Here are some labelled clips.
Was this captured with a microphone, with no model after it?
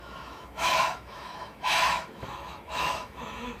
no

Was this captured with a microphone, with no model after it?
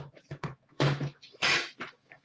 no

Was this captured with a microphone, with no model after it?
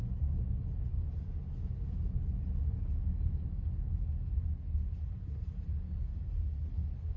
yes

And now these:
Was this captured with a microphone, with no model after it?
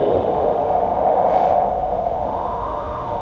no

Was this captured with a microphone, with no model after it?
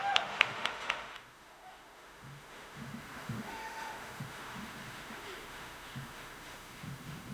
no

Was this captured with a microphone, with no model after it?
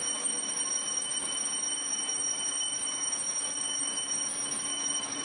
no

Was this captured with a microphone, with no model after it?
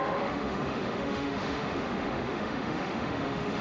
no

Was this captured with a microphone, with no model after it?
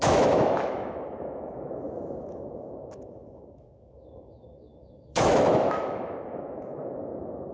no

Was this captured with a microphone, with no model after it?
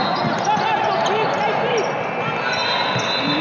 yes